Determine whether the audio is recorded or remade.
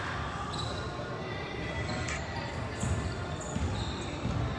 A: recorded